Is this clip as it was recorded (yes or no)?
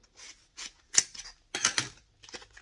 yes